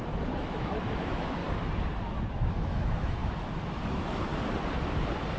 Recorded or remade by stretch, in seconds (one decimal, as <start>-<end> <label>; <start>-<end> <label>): 0.0-1.4 remade; 1.4-2.3 recorded; 2.3-4.3 remade; 4.3-5.4 recorded